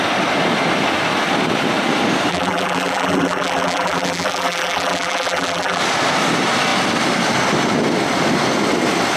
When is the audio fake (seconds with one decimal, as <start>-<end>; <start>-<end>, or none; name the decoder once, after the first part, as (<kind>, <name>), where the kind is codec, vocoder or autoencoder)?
2.3-5.8 (vocoder, BigVGAN v2)